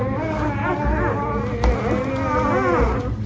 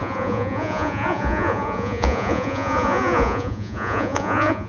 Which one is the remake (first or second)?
second